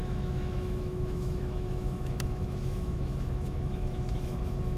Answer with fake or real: fake